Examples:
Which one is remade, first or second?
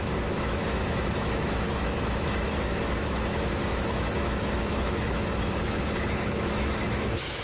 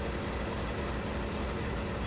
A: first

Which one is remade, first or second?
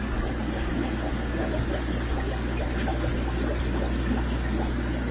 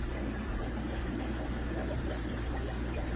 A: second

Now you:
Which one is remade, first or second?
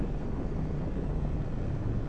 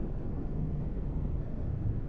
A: second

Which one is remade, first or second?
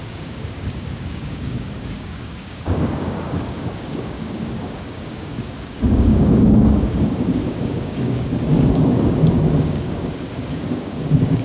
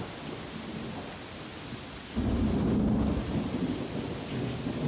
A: first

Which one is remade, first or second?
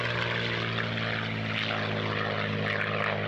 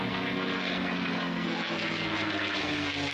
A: second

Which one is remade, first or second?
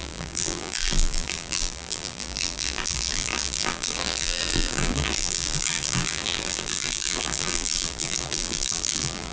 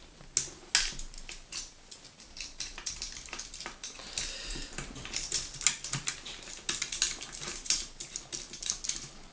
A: first